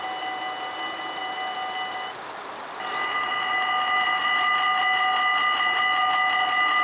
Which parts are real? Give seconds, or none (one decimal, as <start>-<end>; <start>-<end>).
0.0-6.8